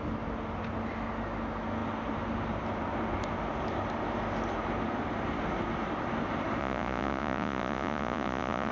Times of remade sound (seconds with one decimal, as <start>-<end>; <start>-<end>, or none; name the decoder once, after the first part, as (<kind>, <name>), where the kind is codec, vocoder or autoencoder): 6.6-8.7 (vocoder, Vocos)